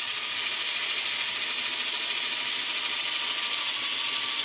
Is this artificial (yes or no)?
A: no